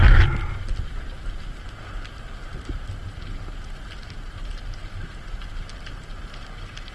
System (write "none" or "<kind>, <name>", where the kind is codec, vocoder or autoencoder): none